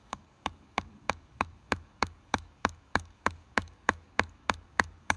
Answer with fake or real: fake